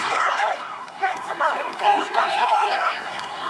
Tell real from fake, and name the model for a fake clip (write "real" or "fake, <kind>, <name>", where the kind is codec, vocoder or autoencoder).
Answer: fake, codec, SNAC